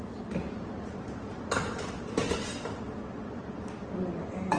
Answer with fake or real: real